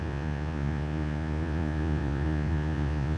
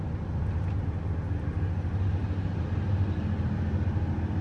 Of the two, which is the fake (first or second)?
first